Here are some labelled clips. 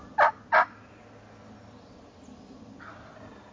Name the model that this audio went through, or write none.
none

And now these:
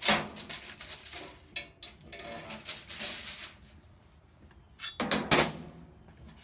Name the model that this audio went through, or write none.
none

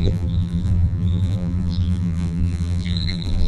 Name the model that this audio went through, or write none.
vocoder, BigVGAN v2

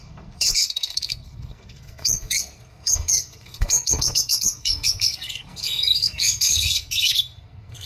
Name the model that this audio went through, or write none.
codec, SNAC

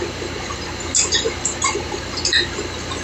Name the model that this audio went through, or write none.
none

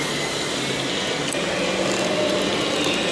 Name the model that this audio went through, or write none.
none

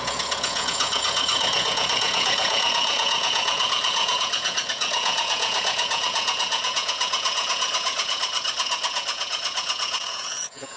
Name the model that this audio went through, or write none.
vocoder, Vocos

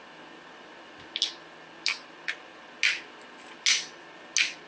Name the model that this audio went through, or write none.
none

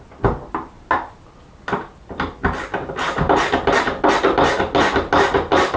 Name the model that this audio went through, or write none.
none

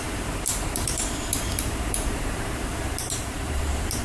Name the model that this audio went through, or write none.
vocoder, BigVGAN v2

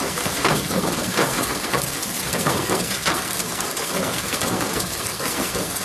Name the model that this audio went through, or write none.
codec, SNAC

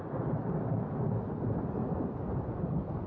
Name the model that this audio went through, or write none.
none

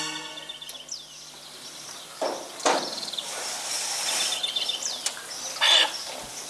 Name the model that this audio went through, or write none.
vocoder, BigVGAN v2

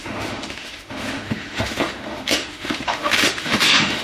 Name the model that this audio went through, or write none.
autoencoder, DAC-VAE